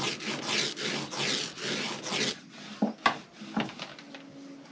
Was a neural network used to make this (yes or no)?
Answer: no